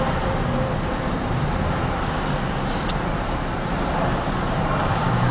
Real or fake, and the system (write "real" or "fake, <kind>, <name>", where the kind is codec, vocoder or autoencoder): fake, vocoder, BigVGAN v2